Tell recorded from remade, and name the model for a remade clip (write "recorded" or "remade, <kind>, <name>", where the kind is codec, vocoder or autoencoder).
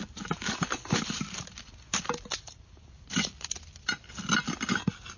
recorded